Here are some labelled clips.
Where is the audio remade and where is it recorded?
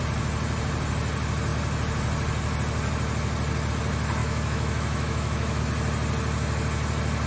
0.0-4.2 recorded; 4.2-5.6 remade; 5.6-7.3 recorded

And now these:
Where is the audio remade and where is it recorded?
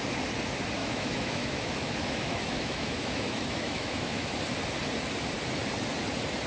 0.0-0.8 recorded; 0.8-4.4 remade; 4.4-6.5 recorded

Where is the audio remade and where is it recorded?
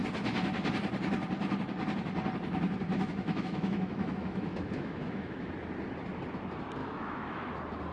0.0-2.9 recorded; 2.9-5.5 remade; 5.5-6.8 recorded; 6.8-7.5 remade; 7.5-7.9 recorded